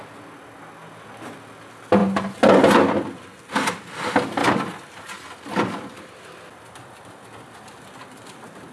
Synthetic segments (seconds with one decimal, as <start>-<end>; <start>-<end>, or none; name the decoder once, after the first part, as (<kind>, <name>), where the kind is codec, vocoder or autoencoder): none